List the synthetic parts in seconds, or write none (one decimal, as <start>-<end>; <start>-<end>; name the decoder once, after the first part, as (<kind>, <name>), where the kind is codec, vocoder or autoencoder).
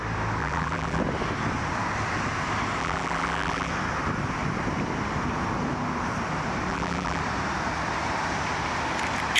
0.4-1.0 (vocoder, BigVGAN v2); 2.8-3.7; 6.7-7.2